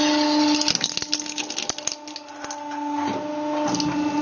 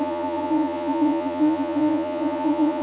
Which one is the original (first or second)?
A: first